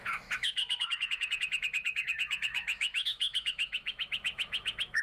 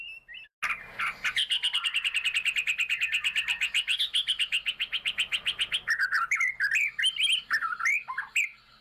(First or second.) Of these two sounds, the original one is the second